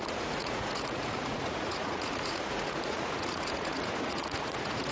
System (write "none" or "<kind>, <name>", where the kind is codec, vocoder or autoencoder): vocoder, Vocos